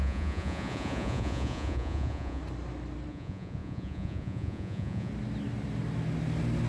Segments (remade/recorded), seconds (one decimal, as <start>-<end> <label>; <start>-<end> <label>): 0.0-2.4 remade; 2.4-3.1 recorded; 3.1-5.1 remade; 5.1-6.7 recorded

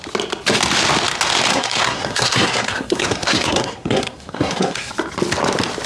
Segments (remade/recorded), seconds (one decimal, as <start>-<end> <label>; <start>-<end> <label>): 0.0-1.5 recorded; 1.5-4.9 remade; 4.9-5.9 recorded

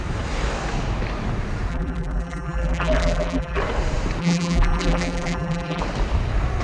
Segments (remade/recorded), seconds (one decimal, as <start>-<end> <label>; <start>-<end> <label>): 0.0-1.7 recorded; 1.7-3.6 remade; 3.6-4.2 recorded; 4.2-5.8 remade; 5.8-6.6 recorded

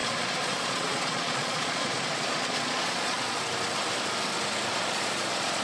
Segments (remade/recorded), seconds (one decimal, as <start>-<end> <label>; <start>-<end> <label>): 0.0-3.4 remade; 3.4-4.7 recorded; 4.7-5.6 remade

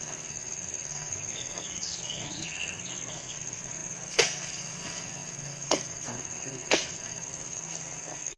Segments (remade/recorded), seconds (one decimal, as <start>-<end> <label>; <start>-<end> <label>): 0.0-8.4 remade

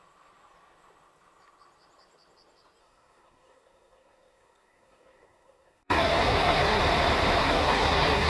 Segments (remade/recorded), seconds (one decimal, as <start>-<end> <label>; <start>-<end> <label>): 0.0-2.8 recorded; 2.8-6.8 remade; 6.8-7.4 recorded; 7.4-8.3 remade